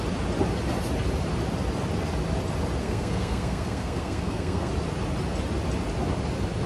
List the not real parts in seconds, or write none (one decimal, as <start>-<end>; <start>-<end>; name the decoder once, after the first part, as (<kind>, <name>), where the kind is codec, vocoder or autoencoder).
2.8-4.7 (codec, SNAC)